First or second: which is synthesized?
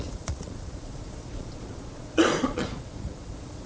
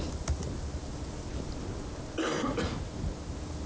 first